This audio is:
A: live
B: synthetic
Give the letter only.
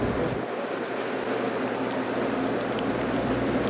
A